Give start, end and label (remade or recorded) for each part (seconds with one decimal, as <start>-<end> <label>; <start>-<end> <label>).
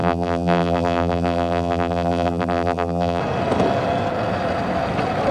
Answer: 0.0-3.2 remade; 3.2-5.3 recorded